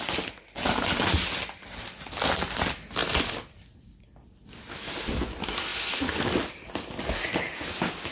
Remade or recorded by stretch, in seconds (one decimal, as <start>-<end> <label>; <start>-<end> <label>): 0.0-8.1 recorded